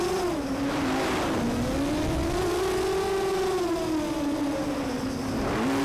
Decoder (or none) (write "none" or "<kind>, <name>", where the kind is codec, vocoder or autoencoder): none